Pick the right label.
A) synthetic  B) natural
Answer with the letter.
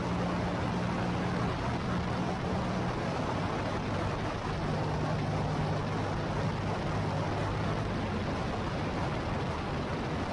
B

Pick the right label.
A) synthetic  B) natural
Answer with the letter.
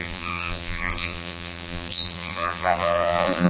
A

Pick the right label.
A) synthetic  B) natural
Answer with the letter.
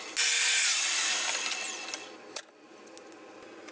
B